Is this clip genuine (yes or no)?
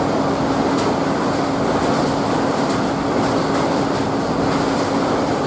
yes